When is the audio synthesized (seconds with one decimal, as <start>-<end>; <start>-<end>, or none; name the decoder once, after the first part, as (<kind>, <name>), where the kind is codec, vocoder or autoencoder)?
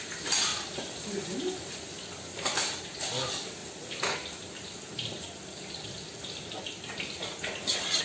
2.3-3.1 (vocoder, BigVGAN v2)